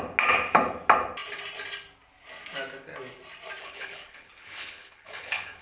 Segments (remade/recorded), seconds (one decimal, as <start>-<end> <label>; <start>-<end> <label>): 0.0-3.6 recorded; 3.6-5.6 remade